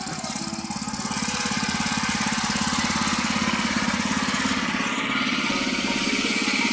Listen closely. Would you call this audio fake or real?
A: real